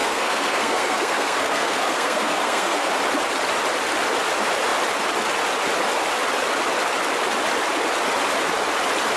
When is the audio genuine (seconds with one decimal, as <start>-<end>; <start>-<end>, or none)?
2.9-9.2